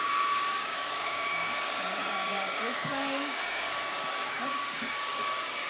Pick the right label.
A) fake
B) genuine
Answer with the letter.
A